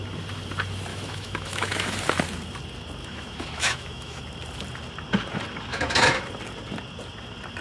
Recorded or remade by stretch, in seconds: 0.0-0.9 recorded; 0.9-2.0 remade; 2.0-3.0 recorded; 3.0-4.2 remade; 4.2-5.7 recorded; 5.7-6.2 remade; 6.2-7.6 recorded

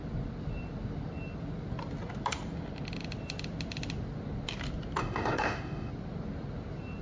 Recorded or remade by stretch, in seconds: 0.0-5.0 recorded; 5.0-5.9 remade; 5.9-7.0 recorded